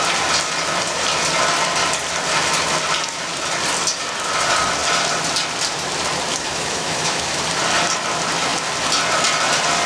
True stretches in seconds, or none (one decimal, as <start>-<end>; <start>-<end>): 0.0-6.3; 7.4-9.9